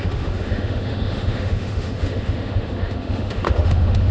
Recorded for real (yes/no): no